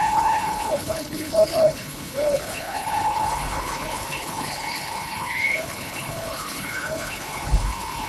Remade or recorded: remade